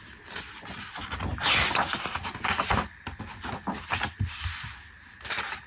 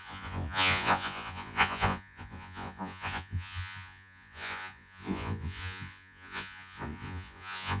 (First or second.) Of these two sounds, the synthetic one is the second